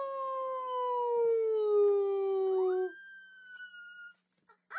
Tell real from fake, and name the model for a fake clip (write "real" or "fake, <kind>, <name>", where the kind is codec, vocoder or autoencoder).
real